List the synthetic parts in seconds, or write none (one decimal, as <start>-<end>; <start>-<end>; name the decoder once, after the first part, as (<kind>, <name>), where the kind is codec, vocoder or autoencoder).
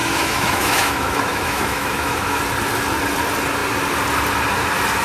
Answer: 0.0-2.4 (autoencoder, DAC-VAE)